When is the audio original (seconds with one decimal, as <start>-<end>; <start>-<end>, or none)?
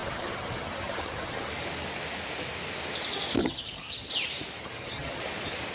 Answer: 1.5-3.4; 4.1-4.6; 5.2-5.7